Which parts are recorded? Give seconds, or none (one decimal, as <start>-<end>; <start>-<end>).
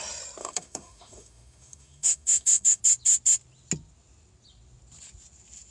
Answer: 0.0-0.4; 2.8-5.7